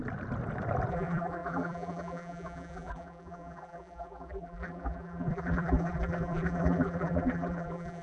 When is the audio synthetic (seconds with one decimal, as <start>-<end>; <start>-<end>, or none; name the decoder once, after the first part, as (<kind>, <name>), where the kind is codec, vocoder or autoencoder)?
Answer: 0.9-8.0 (vocoder, BigVGAN v2)